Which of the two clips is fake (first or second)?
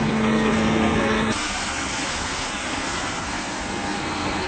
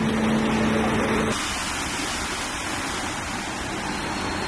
first